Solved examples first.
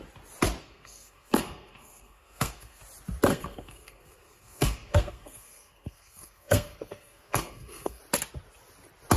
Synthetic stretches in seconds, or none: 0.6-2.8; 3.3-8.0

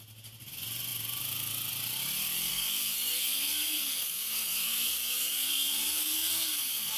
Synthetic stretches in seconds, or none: 2.5-7.0

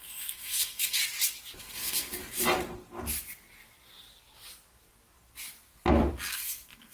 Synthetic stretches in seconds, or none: 0.0-1.0; 1.6-2.2; 6.3-6.9

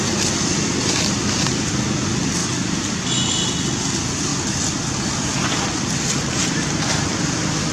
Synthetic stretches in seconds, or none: none

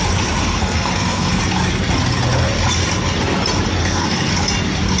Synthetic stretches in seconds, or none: 0.4-1.4; 3.8-4.3

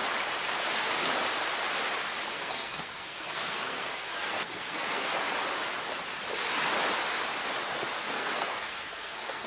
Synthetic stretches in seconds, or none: 2.3-5.1; 8.1-9.5